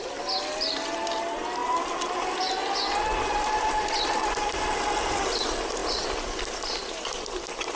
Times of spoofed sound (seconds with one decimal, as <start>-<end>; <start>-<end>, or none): 1.6-2.3